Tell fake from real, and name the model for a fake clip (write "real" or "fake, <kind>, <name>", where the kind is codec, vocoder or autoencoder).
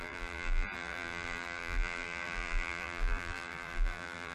fake, vocoder, BigVGAN v2